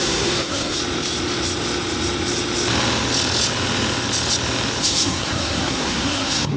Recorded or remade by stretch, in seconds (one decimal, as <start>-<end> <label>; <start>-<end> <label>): 0.0-0.8 remade; 0.8-4.8 recorded; 4.8-6.6 remade